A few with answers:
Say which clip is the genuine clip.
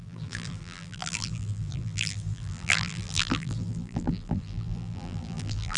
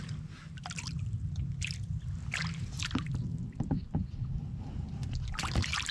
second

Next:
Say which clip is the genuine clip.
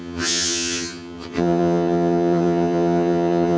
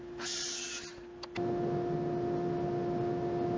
second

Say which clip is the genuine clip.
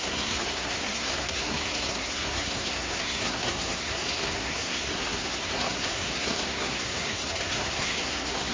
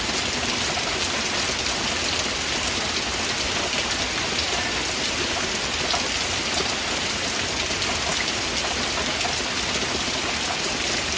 second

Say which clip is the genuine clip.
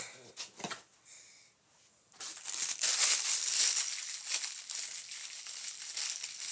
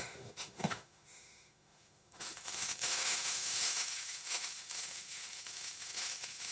first